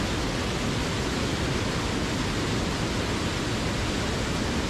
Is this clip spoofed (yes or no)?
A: no